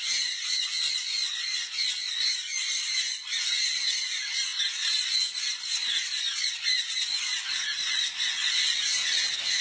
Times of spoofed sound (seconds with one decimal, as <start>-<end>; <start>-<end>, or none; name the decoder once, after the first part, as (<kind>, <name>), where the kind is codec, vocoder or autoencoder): none